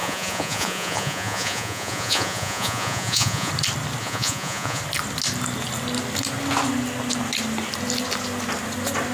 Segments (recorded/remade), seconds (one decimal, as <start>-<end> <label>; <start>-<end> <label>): 0.0-3.5 remade; 3.5-4.0 recorded; 4.0-4.8 remade; 4.8-9.1 recorded